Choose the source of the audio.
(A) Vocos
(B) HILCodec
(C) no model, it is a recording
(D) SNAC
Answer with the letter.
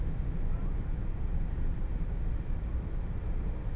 C